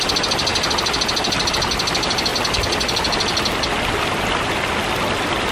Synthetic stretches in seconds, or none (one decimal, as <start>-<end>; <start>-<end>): none